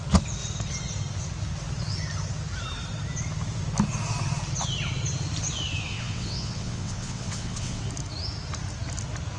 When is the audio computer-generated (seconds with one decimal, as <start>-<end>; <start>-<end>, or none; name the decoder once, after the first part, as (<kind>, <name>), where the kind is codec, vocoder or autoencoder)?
5.9-7.8 (vocoder, WaveNeXt)